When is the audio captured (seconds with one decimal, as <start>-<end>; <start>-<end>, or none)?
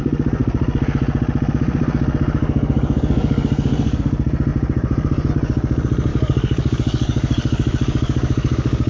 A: 0.0-2.4; 4.0-6.1